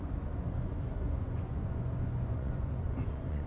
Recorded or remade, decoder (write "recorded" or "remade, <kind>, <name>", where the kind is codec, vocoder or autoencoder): remade, vocoder, Vocos